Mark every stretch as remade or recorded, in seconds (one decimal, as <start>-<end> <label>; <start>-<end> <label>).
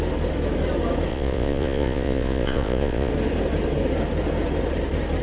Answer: 0.0-1.1 recorded; 1.1-3.1 remade; 3.1-5.2 recorded